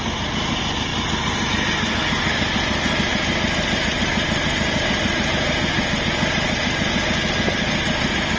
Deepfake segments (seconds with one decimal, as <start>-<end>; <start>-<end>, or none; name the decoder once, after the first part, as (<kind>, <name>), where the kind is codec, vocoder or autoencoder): none